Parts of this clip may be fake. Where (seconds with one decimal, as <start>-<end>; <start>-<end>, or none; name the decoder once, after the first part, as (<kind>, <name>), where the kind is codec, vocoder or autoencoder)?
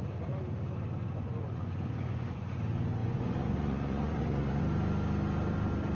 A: 1.0-2.6 (vocoder, Vocos); 3.0-4.6